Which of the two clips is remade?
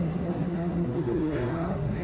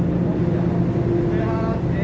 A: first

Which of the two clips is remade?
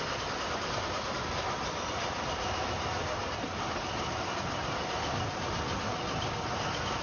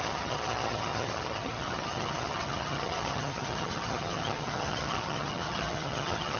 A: second